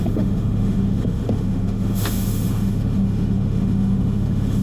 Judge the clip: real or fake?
fake